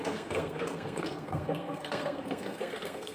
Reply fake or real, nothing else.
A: fake